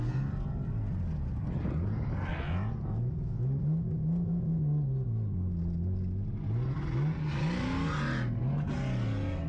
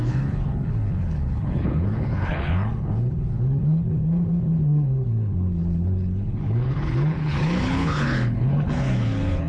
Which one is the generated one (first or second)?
second